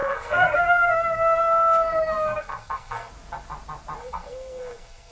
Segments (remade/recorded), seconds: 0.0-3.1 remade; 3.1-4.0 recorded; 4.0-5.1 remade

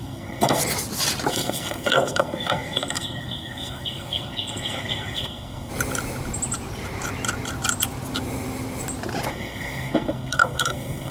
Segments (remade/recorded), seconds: 0.0-0.6 remade; 0.6-1.3 recorded; 1.3-5.7 remade; 5.7-9.3 recorded; 9.3-11.1 remade

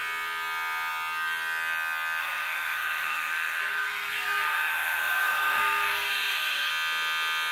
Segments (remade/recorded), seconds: 0.0-2.2 recorded; 2.2-6.7 remade; 6.7-7.5 recorded

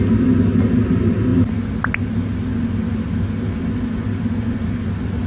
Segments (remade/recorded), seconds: 0.0-5.3 recorded